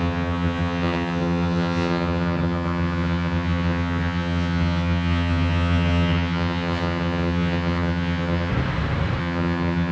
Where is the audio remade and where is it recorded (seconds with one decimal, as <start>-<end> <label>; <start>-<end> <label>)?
0.0-8.5 remade; 8.5-9.2 recorded; 9.2-9.9 remade